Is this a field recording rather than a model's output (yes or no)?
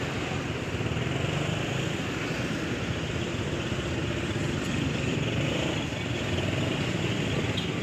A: yes